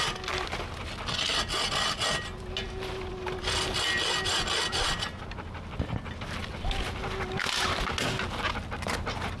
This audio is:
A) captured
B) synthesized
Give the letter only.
A